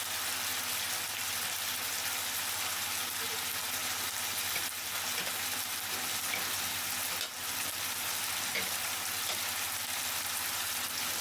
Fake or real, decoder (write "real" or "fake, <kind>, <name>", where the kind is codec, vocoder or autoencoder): real